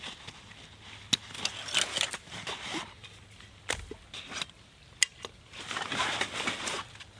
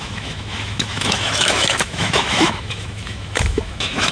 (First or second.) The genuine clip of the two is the first